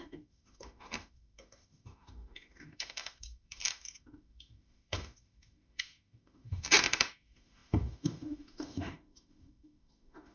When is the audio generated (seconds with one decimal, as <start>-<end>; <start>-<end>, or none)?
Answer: 0.0-10.3